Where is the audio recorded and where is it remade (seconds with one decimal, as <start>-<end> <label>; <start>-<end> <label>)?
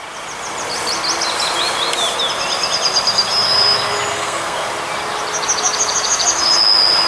0.0-4.1 recorded; 4.1-4.7 remade; 4.7-7.1 recorded